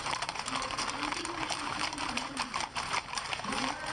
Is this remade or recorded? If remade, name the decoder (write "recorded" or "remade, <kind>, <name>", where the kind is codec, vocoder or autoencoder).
remade, vocoder, BigVGAN v2